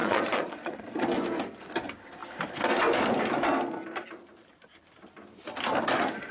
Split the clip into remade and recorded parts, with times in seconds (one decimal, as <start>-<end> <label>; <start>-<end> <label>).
0.0-0.8 remade; 0.8-6.3 recorded